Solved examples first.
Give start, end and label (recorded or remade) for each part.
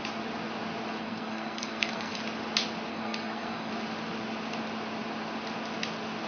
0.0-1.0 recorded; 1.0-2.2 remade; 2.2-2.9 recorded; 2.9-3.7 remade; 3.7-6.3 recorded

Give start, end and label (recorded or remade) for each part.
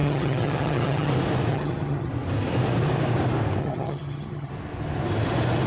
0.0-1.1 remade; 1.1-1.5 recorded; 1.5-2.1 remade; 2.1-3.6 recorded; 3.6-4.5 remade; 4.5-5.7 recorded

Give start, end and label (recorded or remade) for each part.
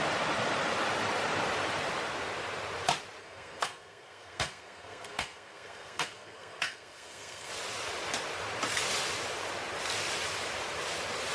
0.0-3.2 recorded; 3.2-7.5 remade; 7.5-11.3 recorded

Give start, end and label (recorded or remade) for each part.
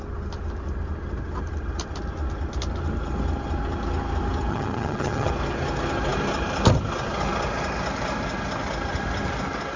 0.0-4.5 recorded; 4.5-5.3 remade; 5.3-9.8 recorded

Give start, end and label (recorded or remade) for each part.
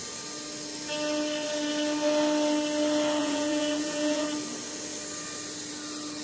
0.0-3.2 recorded; 3.2-4.2 remade; 4.2-6.2 recorded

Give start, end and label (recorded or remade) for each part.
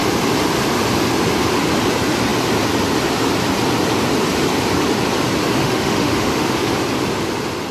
0.0-5.6 recorded; 5.6-6.7 remade; 6.7-7.7 recorded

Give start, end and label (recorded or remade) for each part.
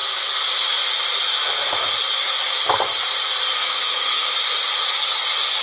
0.0-3.6 recorded; 3.6-4.3 remade; 4.3-5.6 recorded